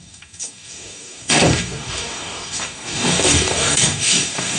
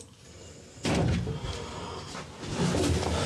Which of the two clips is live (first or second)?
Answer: second